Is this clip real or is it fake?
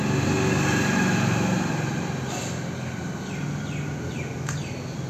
real